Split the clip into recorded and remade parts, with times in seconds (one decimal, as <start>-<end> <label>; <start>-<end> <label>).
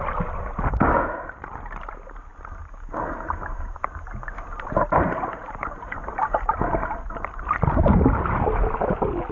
0.0-9.3 recorded